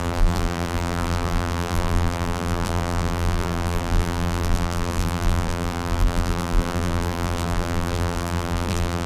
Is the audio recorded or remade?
remade